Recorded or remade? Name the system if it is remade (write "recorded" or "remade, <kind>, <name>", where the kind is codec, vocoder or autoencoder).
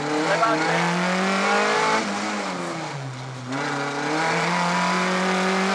recorded